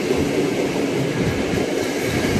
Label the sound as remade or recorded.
recorded